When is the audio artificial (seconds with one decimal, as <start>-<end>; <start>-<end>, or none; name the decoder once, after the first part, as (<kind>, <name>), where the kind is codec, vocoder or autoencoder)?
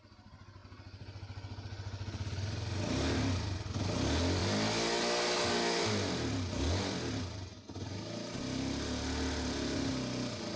none